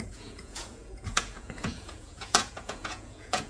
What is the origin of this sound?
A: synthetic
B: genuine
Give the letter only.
A